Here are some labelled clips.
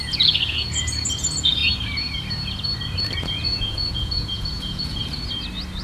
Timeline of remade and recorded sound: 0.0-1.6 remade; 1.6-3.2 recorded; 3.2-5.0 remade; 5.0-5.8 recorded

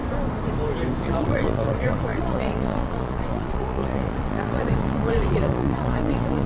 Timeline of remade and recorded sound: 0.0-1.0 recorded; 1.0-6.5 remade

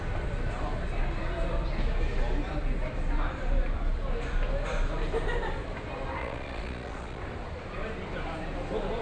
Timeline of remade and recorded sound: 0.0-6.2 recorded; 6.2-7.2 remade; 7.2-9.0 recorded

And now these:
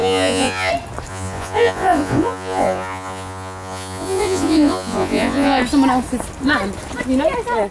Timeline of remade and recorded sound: 0.0-0.7 remade; 0.7-1.1 recorded; 1.1-5.6 remade; 5.6-7.7 recorded

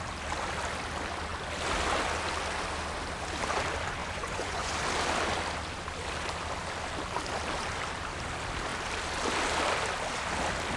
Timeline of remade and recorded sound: 0.0-4.0 recorded; 4.0-4.7 remade; 4.7-10.8 recorded